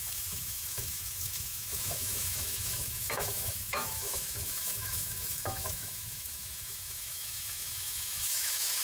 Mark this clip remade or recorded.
remade